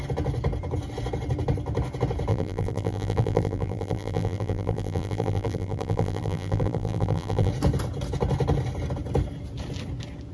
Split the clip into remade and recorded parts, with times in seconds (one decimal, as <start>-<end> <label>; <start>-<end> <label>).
0.0-2.3 recorded; 2.3-7.5 remade; 7.5-10.3 recorded